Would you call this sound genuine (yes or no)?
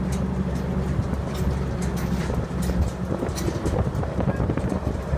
yes